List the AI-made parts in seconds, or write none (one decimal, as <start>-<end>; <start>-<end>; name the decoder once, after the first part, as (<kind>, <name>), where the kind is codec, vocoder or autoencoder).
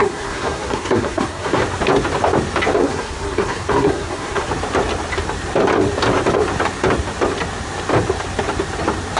0.0-1.6 (codec, SNAC); 2.8-4.5